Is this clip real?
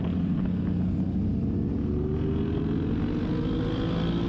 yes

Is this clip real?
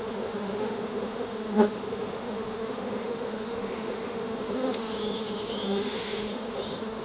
no